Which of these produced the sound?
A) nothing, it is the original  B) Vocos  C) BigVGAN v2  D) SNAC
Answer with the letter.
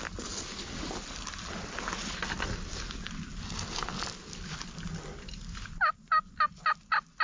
A